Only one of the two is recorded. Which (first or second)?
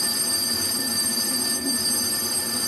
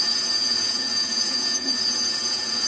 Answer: first